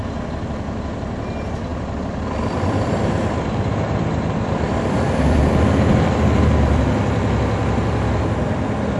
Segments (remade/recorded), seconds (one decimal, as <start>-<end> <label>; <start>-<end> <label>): 0.0-1.7 recorded; 1.7-6.8 remade; 6.8-9.0 recorded